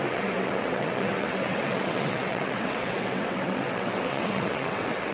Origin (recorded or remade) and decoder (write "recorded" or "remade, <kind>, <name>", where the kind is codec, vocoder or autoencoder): remade, vocoder, WaveNeXt